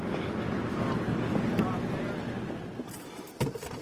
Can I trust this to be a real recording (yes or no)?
yes